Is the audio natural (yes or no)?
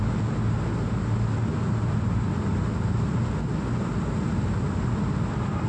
yes